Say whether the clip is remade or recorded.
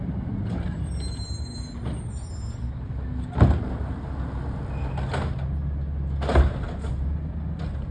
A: recorded